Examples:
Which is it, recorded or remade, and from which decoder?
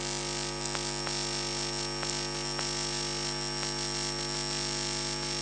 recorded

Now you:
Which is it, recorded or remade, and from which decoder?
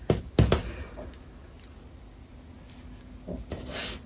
recorded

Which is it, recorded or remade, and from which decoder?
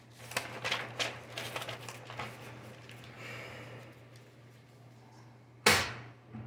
recorded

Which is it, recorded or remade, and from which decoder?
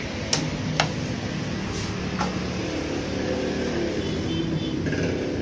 recorded